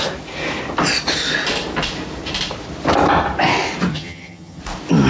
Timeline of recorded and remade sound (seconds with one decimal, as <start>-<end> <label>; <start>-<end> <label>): 0.0-3.9 recorded; 3.9-4.6 remade; 4.6-5.1 recorded